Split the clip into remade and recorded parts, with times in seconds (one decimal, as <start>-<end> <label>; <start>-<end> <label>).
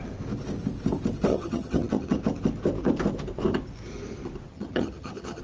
0.0-1.3 recorded; 1.3-2.2 remade; 2.2-4.5 recorded; 4.5-5.4 remade